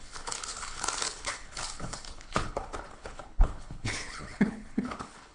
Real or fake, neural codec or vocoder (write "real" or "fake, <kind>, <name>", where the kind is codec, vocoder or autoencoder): fake, codec, HILCodec